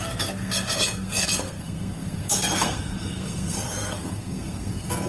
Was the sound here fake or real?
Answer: fake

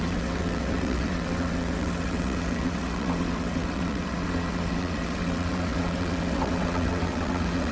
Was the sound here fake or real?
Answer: fake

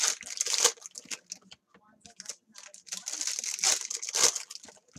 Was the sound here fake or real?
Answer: real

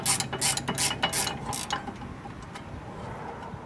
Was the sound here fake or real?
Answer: real